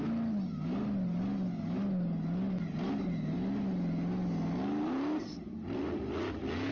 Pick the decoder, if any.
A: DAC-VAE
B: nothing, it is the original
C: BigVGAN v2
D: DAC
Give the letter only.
B